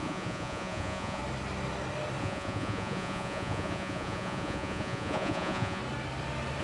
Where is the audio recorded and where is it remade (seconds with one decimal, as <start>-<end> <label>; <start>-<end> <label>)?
0.0-1.2 remade; 1.2-2.2 recorded; 2.2-5.8 remade; 5.8-6.6 recorded